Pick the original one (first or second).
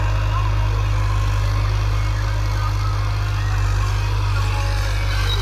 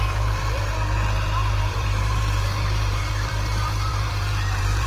first